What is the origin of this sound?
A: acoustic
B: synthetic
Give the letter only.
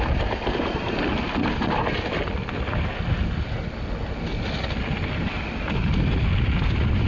A